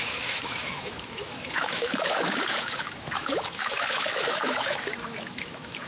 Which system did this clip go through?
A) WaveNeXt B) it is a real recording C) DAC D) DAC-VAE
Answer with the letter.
D